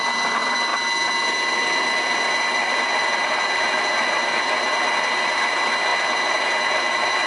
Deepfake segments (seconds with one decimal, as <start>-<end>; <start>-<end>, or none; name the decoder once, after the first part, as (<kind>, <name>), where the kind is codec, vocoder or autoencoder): none